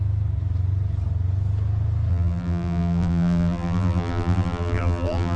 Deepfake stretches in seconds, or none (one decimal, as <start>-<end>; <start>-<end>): 2.1-5.4